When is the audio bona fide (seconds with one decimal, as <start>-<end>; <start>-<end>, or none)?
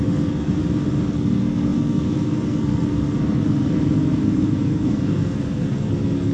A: 0.6-1.1